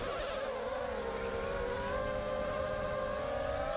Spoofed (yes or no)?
no